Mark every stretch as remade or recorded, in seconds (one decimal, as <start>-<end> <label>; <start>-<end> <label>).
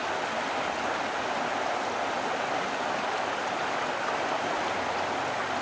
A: 0.0-5.6 recorded